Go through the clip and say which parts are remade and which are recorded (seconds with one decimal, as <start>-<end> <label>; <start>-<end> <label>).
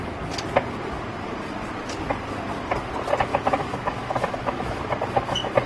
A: 0.0-3.3 recorded; 3.3-4.8 remade; 4.8-5.7 recorded